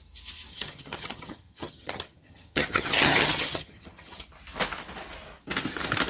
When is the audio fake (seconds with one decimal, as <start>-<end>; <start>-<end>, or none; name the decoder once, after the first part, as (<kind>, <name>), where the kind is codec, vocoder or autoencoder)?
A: 0.5-4.2 (vocoder, HiFi-GAN)